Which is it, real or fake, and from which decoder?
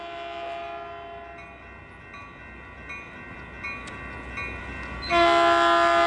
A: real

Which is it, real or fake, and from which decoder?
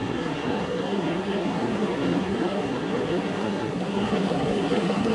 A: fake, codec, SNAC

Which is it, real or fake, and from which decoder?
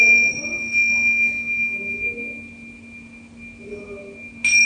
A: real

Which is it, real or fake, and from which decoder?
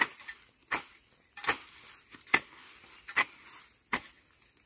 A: real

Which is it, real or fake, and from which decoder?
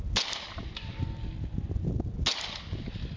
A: real